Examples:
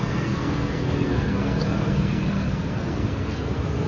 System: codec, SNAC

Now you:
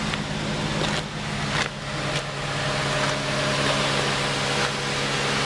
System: none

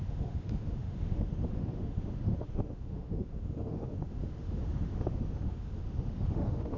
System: autoencoder, DAC-VAE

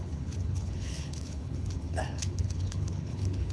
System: codec, HILCodec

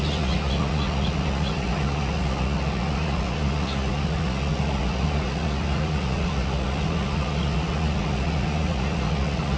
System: vocoder, Vocos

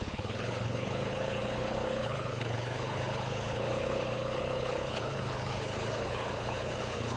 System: codec, HILCodec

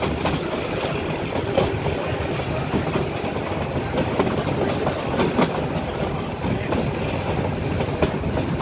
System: none